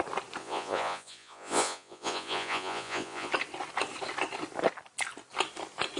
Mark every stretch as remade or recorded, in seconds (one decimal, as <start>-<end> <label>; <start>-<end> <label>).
0.0-0.4 recorded; 0.4-3.3 remade; 3.3-6.0 recorded